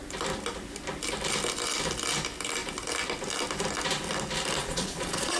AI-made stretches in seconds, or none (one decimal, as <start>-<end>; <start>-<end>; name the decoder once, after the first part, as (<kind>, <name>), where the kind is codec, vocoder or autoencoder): 4.6-5.4 (vocoder, Vocos)

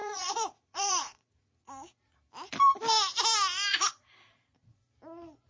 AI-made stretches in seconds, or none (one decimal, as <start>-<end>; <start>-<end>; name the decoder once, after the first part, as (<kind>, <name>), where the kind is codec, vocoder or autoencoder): 0.0-2.3 (vocoder, Vocos); 3.7-4.8